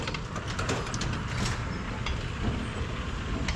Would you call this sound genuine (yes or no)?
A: yes